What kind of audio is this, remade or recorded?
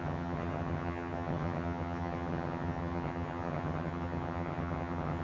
remade